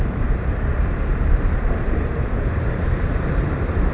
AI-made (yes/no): yes